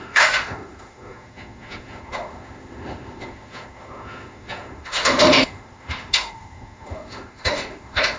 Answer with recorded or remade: remade